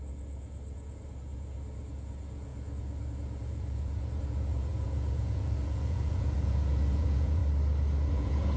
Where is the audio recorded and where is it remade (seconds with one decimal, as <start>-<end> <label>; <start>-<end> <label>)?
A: 0.0-7.4 remade; 7.4-8.1 recorded; 8.1-8.6 remade